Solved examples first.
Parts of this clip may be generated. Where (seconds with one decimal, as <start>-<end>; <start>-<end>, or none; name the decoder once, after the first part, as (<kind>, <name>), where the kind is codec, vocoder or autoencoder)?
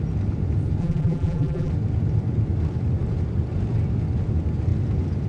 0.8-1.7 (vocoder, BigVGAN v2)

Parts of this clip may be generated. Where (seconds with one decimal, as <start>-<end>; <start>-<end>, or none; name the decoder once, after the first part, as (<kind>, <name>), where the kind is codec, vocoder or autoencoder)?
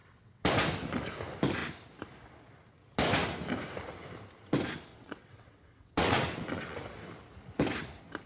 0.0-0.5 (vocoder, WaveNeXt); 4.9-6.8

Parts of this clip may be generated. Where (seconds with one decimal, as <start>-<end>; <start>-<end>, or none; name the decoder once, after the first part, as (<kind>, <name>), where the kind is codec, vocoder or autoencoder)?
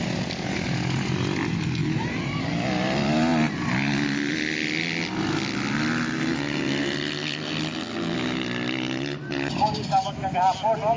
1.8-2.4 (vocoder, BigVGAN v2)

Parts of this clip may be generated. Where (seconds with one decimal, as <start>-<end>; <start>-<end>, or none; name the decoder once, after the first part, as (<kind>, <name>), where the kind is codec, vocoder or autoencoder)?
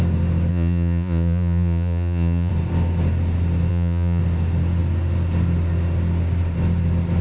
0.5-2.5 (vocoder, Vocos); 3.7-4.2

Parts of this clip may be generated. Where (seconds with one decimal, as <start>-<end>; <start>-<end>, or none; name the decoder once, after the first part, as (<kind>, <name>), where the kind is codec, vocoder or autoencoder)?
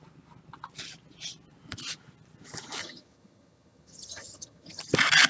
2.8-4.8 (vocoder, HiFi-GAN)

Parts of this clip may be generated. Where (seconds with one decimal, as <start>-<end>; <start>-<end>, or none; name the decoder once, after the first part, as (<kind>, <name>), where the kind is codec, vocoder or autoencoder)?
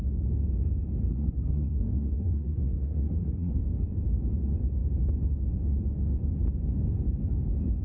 1.1-3.6 (codec, SNAC)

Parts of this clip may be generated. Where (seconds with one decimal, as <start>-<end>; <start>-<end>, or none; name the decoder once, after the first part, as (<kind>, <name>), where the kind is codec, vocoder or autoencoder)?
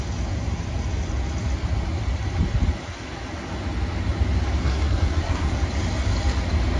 4.6-5.5 (codec, SNAC)